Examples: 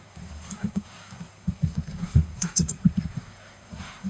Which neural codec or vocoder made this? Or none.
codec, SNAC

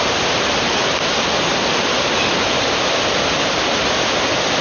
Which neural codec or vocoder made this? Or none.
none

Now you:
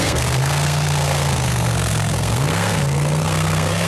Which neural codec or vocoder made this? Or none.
codec, SNAC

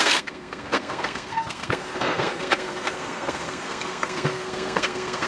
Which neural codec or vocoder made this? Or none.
codec, SNAC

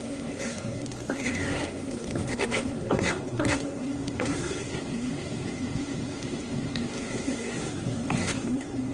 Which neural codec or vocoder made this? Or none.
codec, SNAC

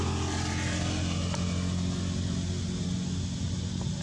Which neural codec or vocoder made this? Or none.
none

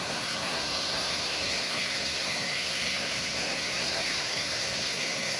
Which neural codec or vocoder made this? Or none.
codec, SNAC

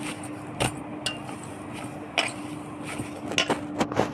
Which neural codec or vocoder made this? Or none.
none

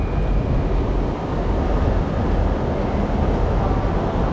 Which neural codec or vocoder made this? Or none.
none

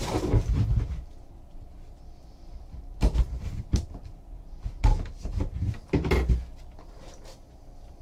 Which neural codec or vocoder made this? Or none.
none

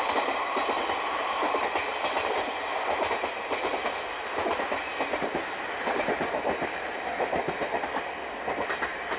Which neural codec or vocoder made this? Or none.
none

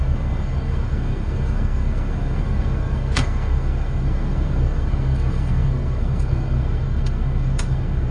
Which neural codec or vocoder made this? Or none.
codec, SNAC